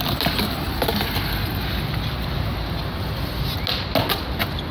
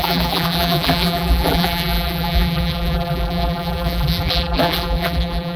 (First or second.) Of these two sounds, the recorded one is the first